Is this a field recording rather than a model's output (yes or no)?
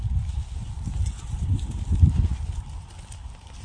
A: yes